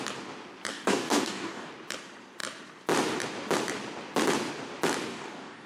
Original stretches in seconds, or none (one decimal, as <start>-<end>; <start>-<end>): 0.0-0.7; 1.7-5.1

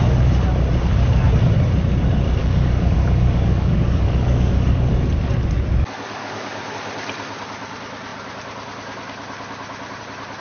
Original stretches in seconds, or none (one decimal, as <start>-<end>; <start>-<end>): 0.0-2.4; 4.9-6.2; 6.7-10.4

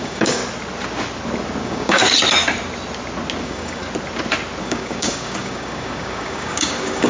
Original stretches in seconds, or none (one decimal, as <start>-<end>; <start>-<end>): 0.4-1.6; 2.0-3.4; 3.8-4.6

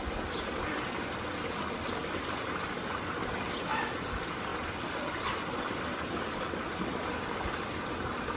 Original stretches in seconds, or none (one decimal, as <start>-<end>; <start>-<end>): 0.0-8.4

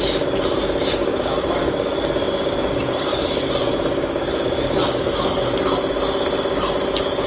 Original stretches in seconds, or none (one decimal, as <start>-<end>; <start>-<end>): 0.0-1.0; 5.4-7.3